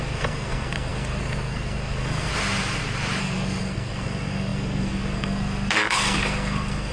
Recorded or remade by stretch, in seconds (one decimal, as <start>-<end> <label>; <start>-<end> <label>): 0.0-2.3 remade; 2.3-3.2 recorded; 3.2-6.9 remade